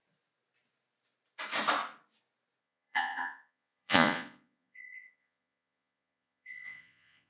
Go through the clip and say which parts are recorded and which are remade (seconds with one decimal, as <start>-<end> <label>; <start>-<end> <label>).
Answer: 0.0-2.6 recorded; 2.6-7.3 remade